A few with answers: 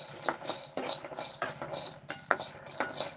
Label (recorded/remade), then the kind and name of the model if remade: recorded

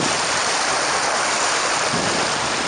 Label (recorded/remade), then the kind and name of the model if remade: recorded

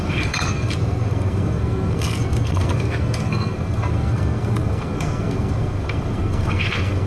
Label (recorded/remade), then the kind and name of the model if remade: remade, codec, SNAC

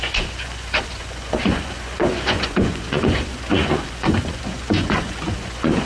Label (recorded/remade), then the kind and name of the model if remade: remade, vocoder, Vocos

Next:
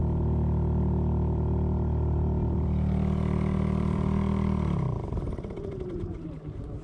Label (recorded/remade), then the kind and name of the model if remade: remade, vocoder, BigVGAN v2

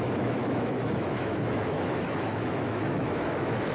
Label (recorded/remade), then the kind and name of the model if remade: remade, autoencoder, DAC-VAE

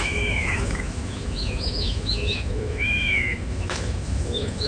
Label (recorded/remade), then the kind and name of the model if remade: remade, autoencoder, DAC-VAE